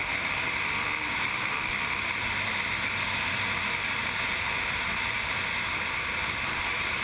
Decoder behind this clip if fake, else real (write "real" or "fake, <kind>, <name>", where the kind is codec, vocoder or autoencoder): real